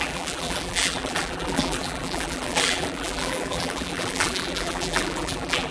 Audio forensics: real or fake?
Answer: fake